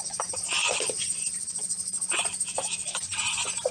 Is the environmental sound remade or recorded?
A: recorded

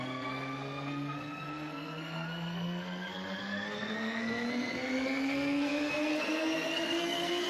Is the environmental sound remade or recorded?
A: remade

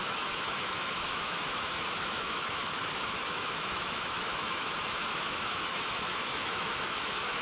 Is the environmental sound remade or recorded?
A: remade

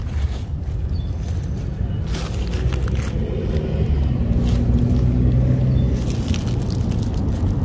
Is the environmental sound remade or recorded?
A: recorded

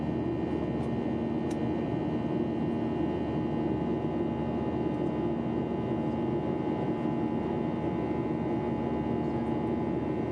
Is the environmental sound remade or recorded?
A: recorded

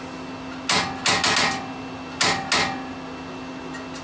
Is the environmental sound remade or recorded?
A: recorded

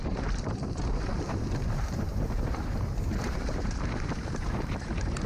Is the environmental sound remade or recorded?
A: remade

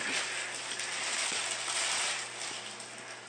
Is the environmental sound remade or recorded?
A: recorded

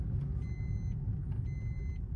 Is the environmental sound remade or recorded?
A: recorded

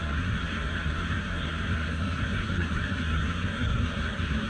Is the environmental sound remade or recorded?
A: remade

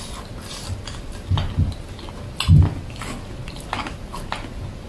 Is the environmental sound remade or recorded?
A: recorded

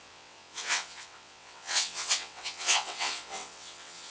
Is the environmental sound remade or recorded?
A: remade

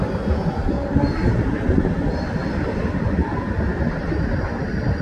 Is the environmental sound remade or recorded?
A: recorded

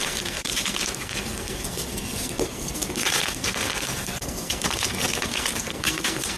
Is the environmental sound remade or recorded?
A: remade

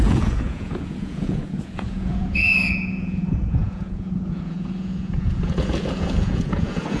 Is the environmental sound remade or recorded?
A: remade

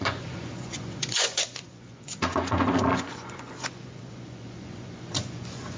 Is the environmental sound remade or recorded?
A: remade